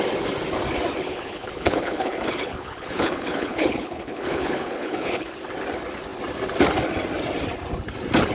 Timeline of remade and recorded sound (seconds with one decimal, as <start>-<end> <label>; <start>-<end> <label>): 0.0-1.1 recorded; 1.1-5.3 remade; 5.3-8.3 recorded